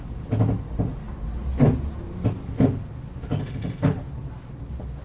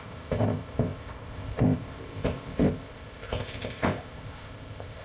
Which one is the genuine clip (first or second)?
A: first